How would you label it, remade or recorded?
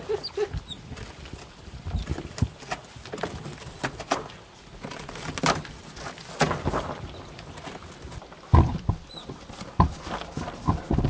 recorded